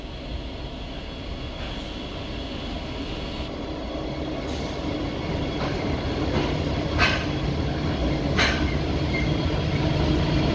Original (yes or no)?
yes